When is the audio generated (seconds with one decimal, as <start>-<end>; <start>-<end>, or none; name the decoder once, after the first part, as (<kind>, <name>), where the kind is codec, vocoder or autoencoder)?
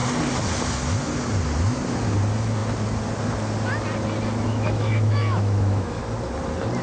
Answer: 4.5-6.0 (autoencoder, DAC-VAE)